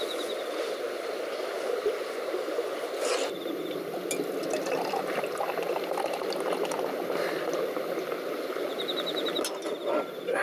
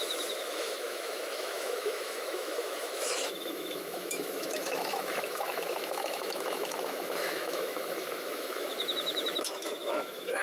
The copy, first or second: second